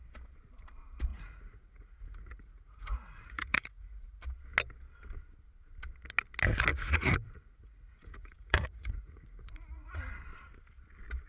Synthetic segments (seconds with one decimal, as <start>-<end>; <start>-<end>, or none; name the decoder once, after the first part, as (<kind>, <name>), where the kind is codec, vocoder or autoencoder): 1.1-4.2 (vocoder, Vocos); 6.7-10.1